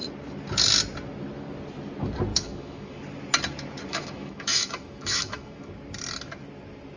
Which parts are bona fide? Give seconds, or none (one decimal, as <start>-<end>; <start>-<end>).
0.0-2.3; 3.0-3.9; 5.7-7.0